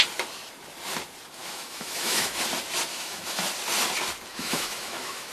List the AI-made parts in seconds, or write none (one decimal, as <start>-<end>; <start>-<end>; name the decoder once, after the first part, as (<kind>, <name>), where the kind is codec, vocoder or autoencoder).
1.4-2.4 (autoencoder, DAC-VAE); 2.9-3.4; 4.3-5.3

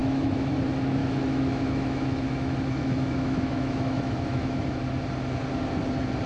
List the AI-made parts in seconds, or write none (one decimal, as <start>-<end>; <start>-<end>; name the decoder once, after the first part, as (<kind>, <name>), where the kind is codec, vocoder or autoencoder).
0.0-0.6 (autoencoder, DAC-VAE); 1.0-4.8

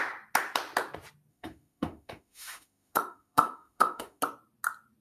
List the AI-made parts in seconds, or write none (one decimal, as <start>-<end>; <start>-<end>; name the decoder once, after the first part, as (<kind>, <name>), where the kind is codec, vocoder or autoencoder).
1.3-4.2 (autoencoder, DAC-VAE)

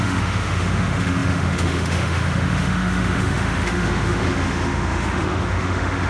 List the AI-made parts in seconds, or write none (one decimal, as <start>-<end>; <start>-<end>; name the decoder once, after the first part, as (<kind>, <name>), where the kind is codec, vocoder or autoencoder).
0.0-6.1 (autoencoder, DAC-VAE)

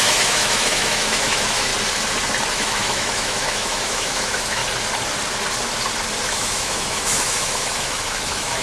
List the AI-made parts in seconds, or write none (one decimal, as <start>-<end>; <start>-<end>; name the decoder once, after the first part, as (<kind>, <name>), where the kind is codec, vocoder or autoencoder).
0.0-1.7 (autoencoder, DAC-VAE); 2.5-4.6; 6.2-8.6